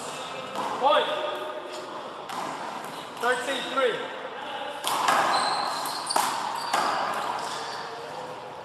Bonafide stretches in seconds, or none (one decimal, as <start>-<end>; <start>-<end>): 0.0-2.3; 2.8-8.6